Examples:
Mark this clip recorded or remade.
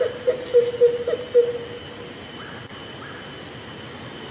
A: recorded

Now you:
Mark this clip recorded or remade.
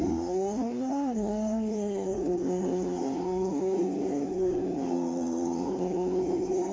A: remade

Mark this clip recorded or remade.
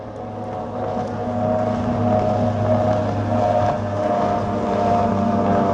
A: recorded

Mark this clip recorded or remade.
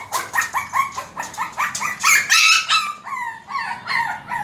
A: recorded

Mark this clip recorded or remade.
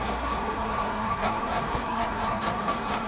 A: remade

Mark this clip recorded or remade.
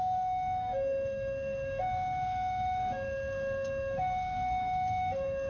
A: remade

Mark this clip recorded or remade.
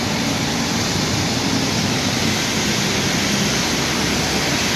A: recorded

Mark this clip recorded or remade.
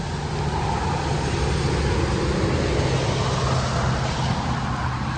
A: recorded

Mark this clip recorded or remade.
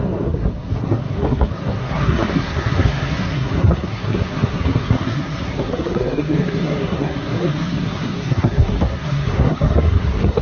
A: remade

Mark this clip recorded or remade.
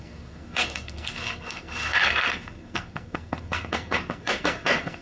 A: remade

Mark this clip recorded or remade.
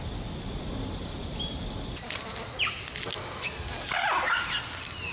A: recorded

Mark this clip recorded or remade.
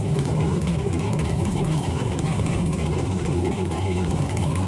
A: remade